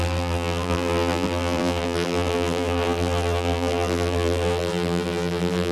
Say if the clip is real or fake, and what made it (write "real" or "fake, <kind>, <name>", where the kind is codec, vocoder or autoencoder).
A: fake, vocoder, BigVGAN v2